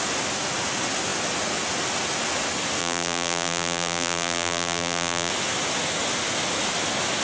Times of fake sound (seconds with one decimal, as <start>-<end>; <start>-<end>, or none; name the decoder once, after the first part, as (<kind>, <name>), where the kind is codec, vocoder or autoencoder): 2.8-5.3 (vocoder, BigVGAN v2)